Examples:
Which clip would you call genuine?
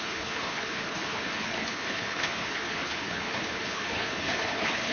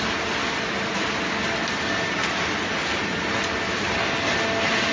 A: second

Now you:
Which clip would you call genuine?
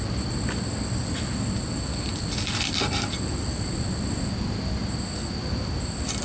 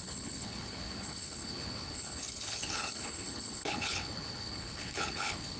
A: first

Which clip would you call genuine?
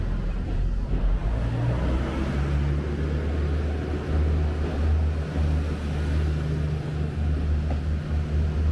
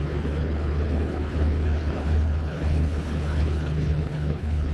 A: first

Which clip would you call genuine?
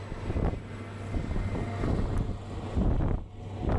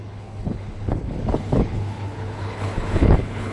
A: first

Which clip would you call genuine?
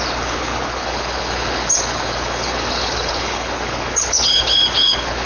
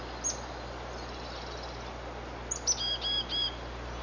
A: second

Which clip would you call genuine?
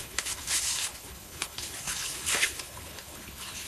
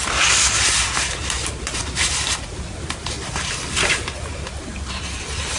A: second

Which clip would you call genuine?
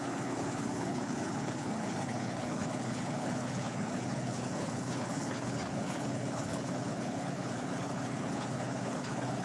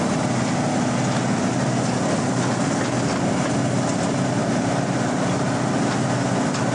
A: second